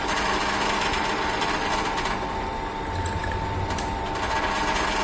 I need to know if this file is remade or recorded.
recorded